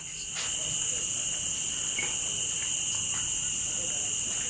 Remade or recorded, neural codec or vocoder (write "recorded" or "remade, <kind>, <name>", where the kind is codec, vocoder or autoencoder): recorded